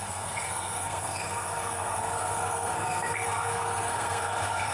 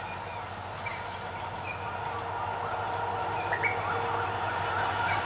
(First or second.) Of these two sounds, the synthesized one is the first